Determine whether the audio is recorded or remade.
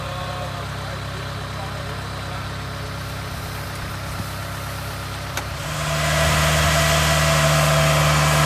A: recorded